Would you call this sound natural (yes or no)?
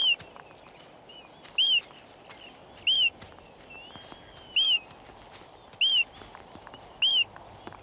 yes